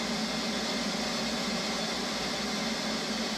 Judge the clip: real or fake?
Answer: real